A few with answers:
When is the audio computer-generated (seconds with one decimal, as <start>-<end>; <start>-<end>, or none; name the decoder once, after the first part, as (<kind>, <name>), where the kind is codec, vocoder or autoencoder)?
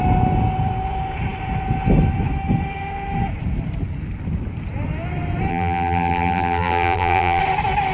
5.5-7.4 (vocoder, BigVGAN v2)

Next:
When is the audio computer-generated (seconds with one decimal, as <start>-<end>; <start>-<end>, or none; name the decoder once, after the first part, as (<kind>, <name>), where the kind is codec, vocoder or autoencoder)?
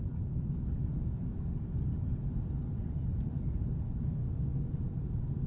0.0-1.3 (vocoder, BigVGAN v2); 3.3-4.2; 4.7-5.5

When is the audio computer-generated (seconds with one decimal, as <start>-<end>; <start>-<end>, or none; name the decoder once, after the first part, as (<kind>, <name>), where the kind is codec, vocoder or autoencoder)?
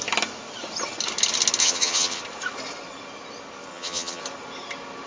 1.6-2.2 (vocoder, HiFi-GAN); 3.7-4.2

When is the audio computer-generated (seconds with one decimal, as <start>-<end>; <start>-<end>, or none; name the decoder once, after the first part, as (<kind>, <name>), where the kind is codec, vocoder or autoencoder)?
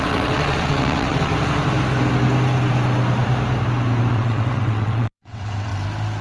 0.0-1.3 (vocoder, WaveNeXt); 4.1-5.7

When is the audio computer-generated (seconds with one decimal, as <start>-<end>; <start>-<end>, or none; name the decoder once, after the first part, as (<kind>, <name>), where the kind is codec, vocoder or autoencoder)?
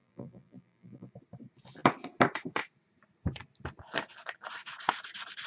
0.0-1.1 (vocoder, BigVGAN v2)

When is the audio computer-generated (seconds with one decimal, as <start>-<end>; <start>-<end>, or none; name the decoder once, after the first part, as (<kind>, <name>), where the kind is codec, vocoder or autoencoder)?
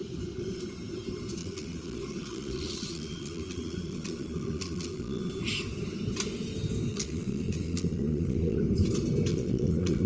1.4-5.3 (vocoder, Vocos); 6.9-8.6; 9.3-10.1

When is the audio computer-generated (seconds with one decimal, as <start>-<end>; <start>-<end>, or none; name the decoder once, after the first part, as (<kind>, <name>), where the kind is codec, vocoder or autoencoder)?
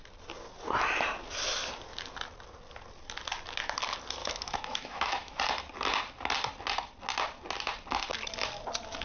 4.2-5.4 (autoencoder, DAC-VAE)